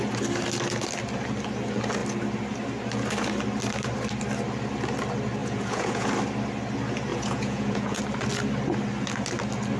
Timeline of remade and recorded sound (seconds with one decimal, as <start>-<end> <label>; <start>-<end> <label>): 0.0-5.4 recorded; 5.4-6.1 remade; 6.1-7.1 recorded; 7.1-8.0 remade; 8.0-9.8 recorded